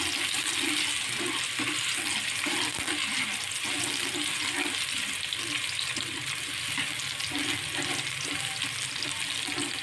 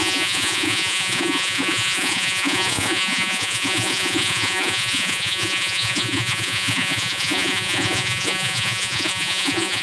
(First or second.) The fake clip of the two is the second